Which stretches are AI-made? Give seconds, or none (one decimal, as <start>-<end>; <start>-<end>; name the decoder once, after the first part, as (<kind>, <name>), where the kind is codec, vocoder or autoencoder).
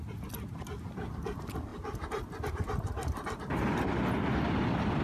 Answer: none